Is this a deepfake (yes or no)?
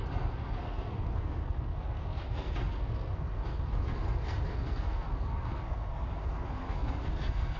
yes